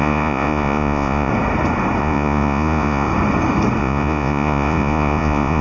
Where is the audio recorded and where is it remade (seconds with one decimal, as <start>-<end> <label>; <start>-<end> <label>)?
0.0-1.3 remade; 1.3-2.0 recorded; 2.0-3.1 remade; 3.1-3.8 recorded; 3.8-5.6 remade